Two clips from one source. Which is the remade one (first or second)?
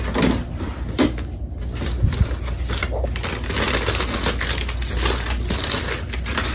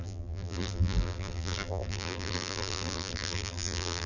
second